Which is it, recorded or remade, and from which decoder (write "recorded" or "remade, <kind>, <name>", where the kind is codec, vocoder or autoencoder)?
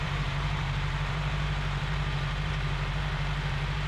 remade, vocoder, BigVGAN v2